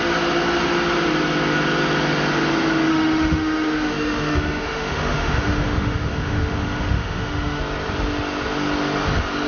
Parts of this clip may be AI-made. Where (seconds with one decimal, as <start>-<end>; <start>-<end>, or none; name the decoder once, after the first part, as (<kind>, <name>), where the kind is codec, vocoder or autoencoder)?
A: 2.9-7.6 (autoencoder, DAC-VAE)